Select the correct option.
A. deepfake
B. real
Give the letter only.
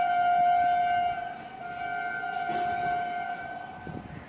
B